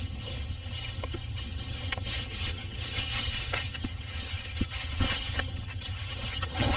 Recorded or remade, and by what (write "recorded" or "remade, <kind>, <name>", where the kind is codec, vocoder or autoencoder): remade, vocoder, HiFi-GAN